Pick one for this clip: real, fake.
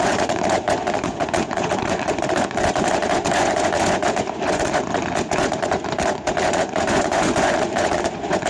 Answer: fake